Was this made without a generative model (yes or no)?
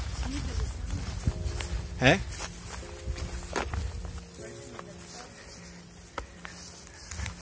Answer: yes